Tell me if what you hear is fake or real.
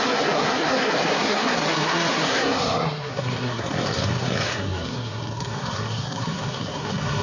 fake